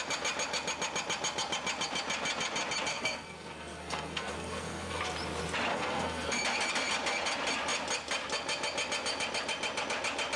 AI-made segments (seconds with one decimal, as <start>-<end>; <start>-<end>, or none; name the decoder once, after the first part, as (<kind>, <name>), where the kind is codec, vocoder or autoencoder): 2.9-5.0 (codec, SNAC); 5.7-6.4